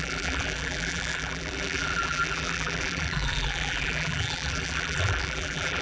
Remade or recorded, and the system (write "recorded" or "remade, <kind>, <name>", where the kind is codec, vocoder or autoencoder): remade, vocoder, BigVGAN v2